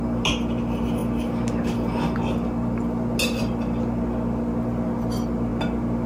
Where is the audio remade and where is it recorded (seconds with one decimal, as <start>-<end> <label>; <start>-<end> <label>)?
0.0-6.1 recorded